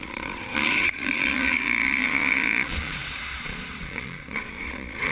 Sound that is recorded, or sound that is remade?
remade